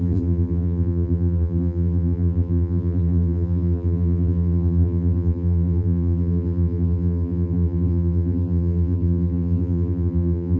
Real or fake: fake